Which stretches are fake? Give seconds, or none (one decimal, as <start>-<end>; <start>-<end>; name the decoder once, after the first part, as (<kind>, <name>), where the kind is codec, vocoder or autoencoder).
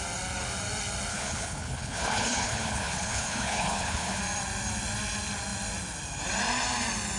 1.1-4.2 (codec, HILCodec)